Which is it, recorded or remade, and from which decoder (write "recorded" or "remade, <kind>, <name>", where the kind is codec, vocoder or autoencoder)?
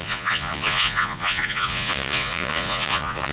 remade, vocoder, Vocos